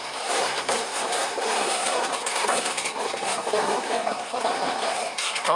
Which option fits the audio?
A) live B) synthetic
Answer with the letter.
B